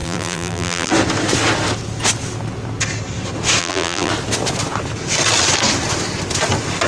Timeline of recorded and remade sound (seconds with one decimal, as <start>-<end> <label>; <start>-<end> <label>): 0.0-0.9 remade; 0.9-3.6 recorded; 3.6-4.1 remade; 4.1-6.9 recorded